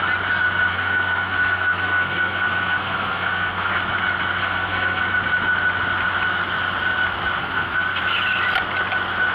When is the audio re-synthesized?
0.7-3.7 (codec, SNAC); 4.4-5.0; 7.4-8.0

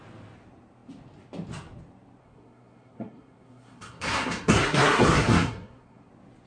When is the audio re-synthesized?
2.2-6.1 (codec, SNAC)

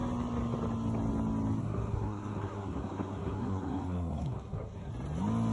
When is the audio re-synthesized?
1.6-4.9 (codec, SNAC)